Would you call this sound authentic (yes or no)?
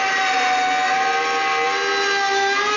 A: yes